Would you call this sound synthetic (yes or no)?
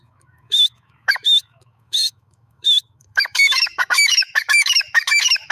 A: yes